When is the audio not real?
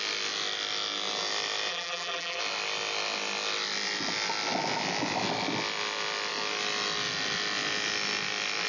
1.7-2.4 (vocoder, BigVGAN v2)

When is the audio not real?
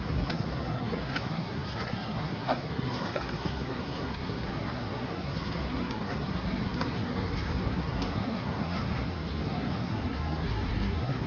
0.0-11.3 (codec, SNAC)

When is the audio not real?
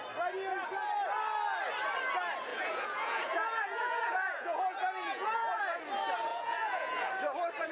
2.5-5.8 (vocoder, Vocos); 6.3-7.1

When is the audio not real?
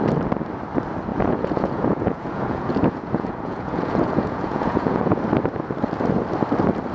1.1-5.2 (vocoder, Vocos)